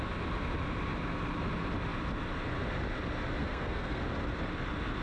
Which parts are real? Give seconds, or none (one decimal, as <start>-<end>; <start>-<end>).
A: 0.0-3.4; 4.0-5.0